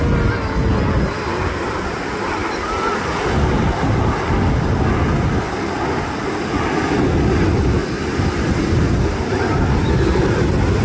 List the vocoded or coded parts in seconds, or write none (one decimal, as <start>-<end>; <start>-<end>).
none